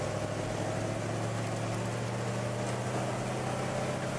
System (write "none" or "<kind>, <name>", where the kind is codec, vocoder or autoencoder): none